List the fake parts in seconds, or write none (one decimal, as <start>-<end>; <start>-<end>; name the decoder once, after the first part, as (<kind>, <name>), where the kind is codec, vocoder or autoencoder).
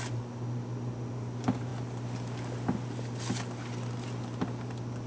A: none